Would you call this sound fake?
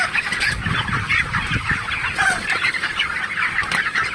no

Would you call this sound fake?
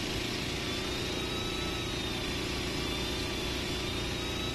no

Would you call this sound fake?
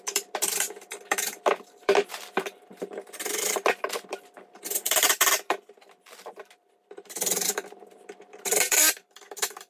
yes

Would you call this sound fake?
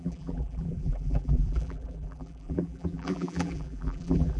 yes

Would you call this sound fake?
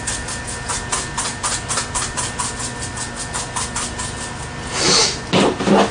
no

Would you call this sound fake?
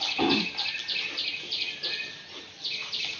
no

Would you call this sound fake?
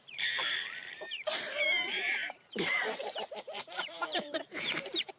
yes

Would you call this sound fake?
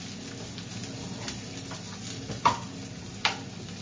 no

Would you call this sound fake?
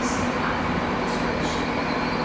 no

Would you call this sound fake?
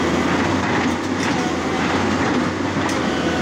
no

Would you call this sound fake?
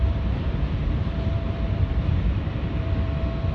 yes